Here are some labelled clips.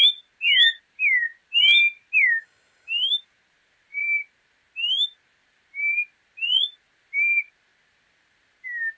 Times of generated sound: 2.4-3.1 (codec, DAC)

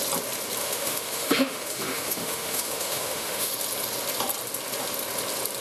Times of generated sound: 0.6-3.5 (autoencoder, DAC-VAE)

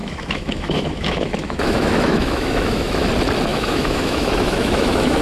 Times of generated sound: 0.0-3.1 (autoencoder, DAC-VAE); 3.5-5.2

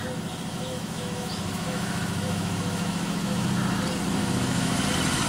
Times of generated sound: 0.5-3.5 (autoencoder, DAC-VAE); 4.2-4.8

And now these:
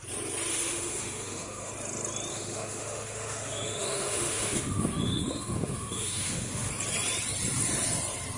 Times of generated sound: 0.5-1.7 (autoencoder, DAC-VAE); 2.3-6.7